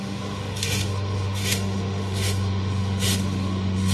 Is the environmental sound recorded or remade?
remade